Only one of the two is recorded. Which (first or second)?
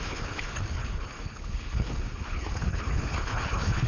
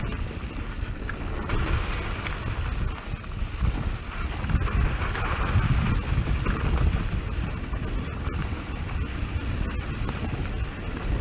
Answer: second